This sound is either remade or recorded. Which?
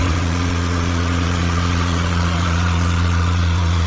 remade